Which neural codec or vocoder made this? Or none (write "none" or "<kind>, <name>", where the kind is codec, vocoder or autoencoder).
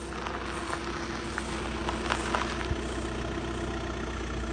none